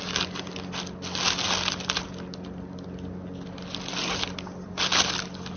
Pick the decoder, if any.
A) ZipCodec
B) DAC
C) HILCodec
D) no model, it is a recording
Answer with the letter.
D